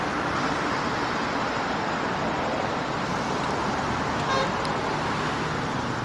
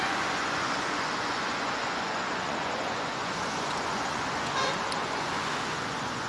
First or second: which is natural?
first